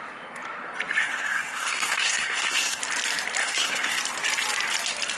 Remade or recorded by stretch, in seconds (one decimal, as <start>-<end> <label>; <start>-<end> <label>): 0.0-1.0 recorded; 1.0-2.8 remade; 2.8-3.4 recorded; 3.4-4.0 remade; 4.0-5.2 recorded